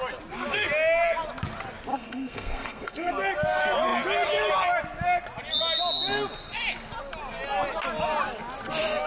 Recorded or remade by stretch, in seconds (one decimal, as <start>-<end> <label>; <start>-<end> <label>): 0.0-1.9 recorded; 1.9-3.1 remade; 3.1-9.1 recorded